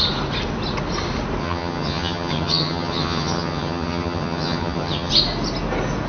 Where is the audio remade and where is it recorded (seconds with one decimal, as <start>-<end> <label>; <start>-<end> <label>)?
0.0-1.4 recorded; 1.4-5.1 remade; 5.1-6.1 recorded